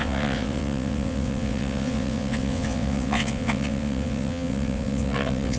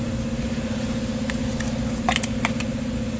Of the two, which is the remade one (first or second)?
first